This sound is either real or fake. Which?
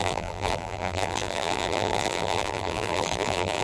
fake